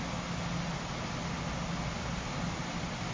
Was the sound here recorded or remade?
recorded